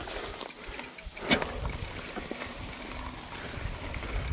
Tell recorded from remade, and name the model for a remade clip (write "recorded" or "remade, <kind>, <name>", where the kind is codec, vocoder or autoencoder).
recorded